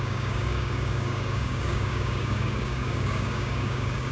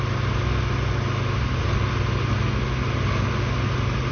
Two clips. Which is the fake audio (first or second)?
first